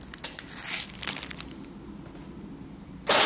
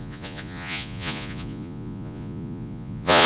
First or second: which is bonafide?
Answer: first